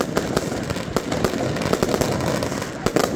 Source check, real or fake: real